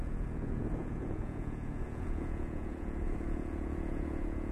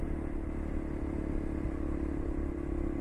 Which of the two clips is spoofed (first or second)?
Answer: first